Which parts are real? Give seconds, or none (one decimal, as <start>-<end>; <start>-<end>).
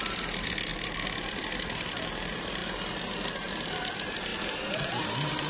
0.0-0.7; 1.5-2.6; 3.9-5.5